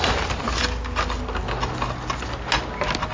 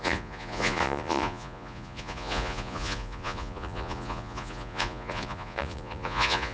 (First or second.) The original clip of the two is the first